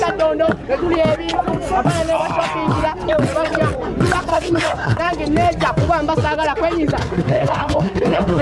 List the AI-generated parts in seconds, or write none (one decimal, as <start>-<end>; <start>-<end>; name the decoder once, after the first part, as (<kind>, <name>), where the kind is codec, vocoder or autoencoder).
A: 4.3-5.0 (codec, SNAC); 7.0-8.4